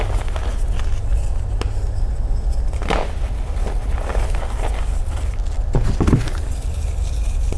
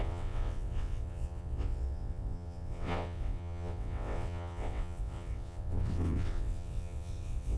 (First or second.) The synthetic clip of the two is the second